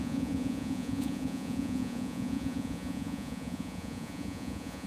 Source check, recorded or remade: remade